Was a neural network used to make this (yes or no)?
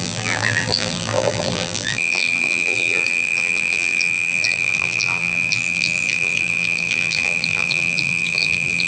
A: yes